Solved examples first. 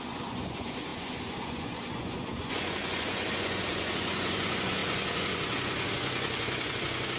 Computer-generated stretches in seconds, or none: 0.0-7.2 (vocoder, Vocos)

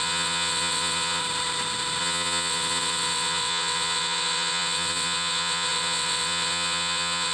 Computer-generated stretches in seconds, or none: 0.0-1.2 (vocoder, WaveNeXt); 2.0-7.3

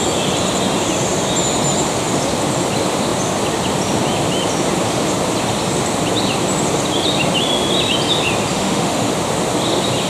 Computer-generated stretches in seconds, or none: 8.5-9.1 (autoencoder, DAC-VAE)

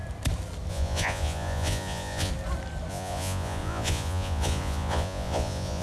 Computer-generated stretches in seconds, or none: 0.7-2.3 (vocoder, Vocos); 2.9-5.8